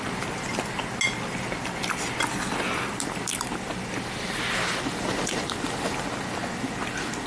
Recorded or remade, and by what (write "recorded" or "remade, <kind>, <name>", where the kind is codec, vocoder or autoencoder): recorded